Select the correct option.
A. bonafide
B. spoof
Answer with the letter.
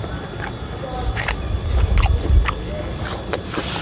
A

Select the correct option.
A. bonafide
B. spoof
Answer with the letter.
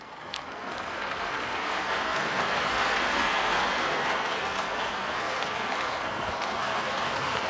B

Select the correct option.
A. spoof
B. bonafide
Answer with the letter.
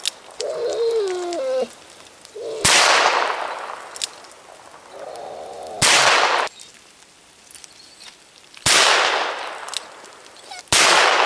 B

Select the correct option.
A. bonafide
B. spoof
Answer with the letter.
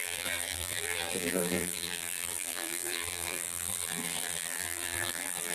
B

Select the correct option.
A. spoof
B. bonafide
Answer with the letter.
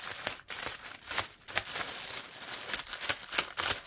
B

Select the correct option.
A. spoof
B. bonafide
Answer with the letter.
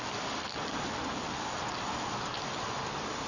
B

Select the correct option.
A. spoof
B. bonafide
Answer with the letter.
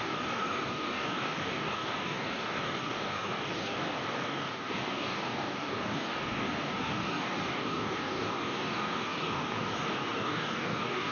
A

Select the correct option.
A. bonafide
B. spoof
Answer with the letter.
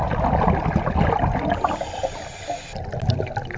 A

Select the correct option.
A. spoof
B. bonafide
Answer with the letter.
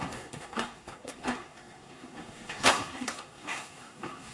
A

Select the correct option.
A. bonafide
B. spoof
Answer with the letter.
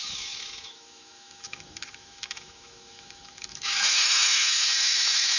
B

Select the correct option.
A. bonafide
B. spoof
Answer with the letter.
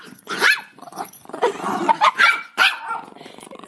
B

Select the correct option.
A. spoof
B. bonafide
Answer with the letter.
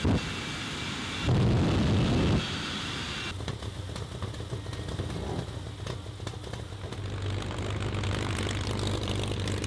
B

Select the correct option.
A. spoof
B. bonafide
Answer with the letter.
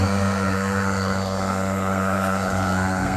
A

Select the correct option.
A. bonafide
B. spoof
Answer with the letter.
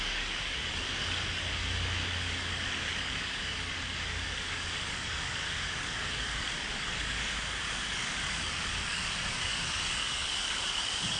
B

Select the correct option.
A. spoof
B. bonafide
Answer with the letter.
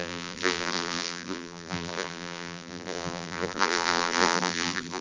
A